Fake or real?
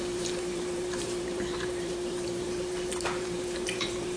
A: fake